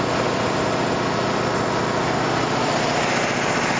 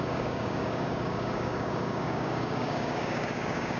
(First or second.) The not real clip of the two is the second